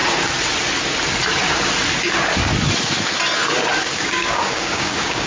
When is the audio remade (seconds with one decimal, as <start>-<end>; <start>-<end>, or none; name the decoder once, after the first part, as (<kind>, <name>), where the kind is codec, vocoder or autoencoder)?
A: 3.8-5.3 (codec, DAC)